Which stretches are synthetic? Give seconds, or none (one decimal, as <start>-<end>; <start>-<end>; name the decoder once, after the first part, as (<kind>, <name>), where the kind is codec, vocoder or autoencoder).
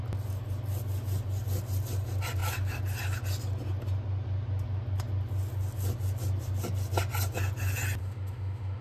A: 8.0-8.8 (autoencoder, DAC-VAE)